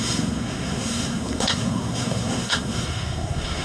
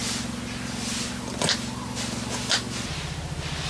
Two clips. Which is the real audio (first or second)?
second